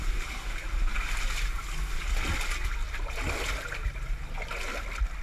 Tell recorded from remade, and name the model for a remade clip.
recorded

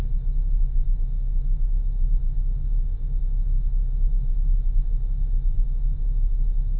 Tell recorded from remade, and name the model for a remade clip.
remade, autoencoder, DAC-VAE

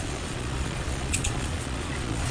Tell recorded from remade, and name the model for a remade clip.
remade, vocoder, Vocos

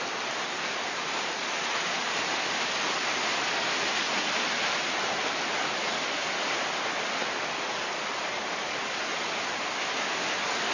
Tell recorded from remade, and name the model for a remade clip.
recorded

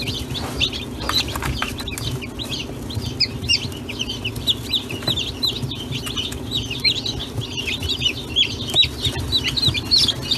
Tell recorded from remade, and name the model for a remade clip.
recorded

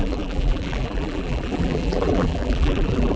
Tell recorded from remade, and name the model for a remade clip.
remade, vocoder, BigVGAN v2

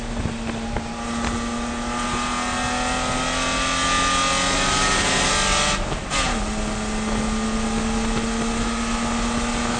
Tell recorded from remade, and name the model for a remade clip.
recorded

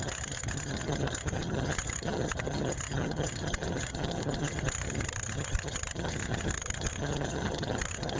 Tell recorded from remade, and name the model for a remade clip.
remade, vocoder, HiFi-GAN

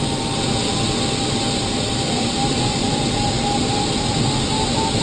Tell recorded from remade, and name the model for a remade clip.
recorded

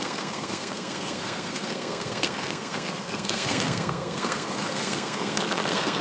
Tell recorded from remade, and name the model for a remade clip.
remade, codec, SNAC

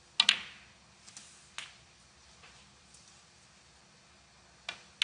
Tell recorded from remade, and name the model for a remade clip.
recorded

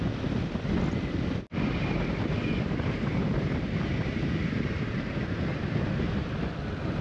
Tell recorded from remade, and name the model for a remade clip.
recorded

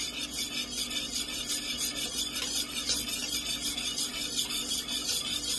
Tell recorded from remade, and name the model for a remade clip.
recorded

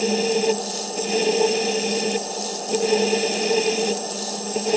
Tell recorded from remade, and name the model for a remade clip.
recorded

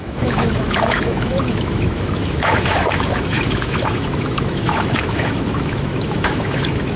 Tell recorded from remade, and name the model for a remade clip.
remade, autoencoder, DAC-VAE